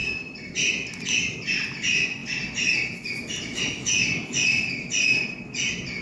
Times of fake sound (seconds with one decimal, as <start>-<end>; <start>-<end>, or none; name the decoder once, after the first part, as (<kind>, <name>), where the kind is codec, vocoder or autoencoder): none